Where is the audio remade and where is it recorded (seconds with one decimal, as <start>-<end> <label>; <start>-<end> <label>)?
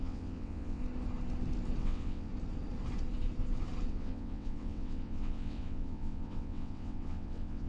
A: 0.0-0.8 remade; 0.8-1.8 recorded; 1.8-2.3 remade; 2.3-3.9 recorded; 3.9-7.7 remade